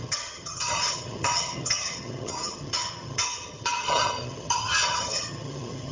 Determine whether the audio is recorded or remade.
remade